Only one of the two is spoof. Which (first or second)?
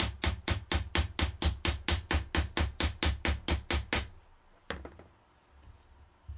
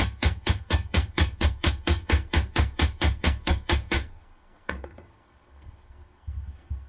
second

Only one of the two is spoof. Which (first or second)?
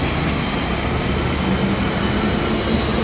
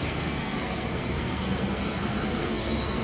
second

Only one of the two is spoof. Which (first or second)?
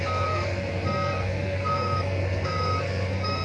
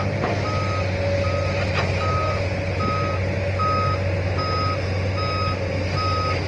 first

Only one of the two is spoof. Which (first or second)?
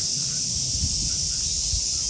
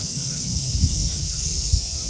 second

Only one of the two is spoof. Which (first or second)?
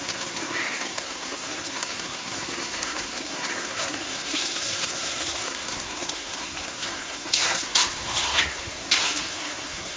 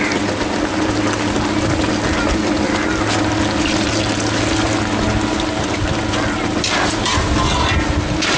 first